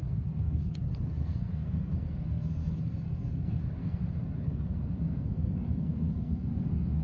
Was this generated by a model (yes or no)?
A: yes